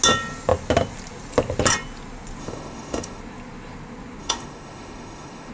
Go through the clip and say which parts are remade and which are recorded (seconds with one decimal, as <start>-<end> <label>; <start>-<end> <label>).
0.0-2.4 recorded; 2.4-3.2 remade; 3.2-4.2 recorded; 4.2-5.5 remade